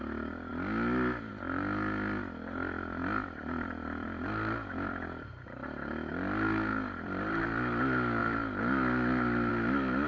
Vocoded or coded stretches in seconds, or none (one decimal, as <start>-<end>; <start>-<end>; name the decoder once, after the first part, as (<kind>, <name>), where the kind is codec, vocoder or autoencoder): 3.0-6.1 (vocoder, BigVGAN v2); 6.7-7.4; 8.2-9.5